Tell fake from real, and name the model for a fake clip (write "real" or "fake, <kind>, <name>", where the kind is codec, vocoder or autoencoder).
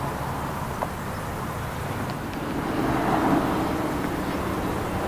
real